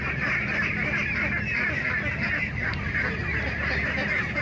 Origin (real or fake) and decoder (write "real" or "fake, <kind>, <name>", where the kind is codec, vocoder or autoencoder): real